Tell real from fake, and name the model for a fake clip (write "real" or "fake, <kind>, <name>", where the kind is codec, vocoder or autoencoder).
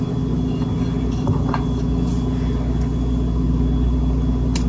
real